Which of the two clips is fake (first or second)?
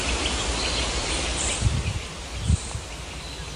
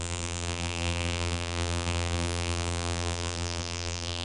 second